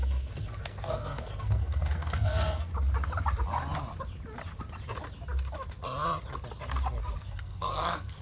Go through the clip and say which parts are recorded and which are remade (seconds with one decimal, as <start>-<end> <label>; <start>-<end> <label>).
0.0-2.7 remade; 2.7-7.0 recorded; 7.0-8.2 remade